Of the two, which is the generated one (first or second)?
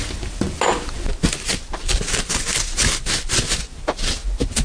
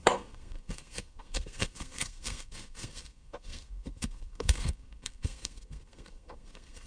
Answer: second